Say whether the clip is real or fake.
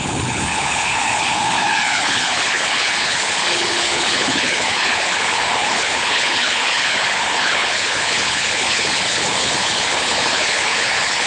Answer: fake